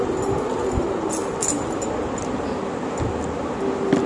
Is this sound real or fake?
real